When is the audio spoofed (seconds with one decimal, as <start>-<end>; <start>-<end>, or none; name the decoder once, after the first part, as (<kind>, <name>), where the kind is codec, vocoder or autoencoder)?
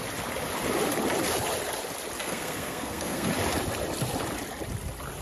2.2-3.3 (codec, SNAC)